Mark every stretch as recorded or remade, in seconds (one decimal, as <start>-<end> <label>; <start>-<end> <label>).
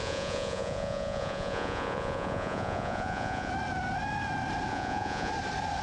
0.0-3.5 remade; 3.5-4.7 recorded; 4.7-5.3 remade; 5.3-5.8 recorded